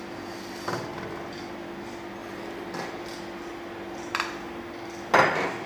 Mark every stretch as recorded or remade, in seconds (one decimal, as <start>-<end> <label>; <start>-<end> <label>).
0.0-5.7 recorded